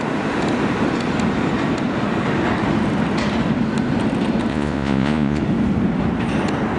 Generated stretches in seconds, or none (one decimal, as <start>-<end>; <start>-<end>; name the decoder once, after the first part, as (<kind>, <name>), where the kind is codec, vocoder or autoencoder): 4.5-5.4 (vocoder, Vocos)